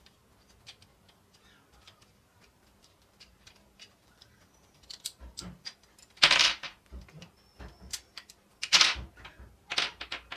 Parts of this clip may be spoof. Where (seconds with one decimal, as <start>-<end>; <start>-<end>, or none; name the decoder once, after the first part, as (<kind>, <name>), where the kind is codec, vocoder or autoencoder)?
2.3-7.4 (vocoder, BigVGAN v2)